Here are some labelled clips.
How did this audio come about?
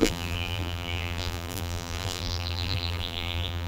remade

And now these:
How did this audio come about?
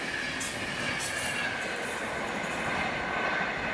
recorded